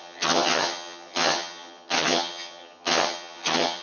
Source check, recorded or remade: remade